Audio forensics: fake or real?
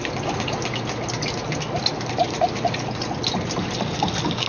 real